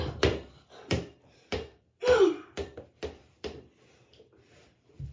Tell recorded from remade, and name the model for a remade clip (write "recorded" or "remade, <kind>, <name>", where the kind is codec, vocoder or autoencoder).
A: remade, vocoder, BigVGAN v2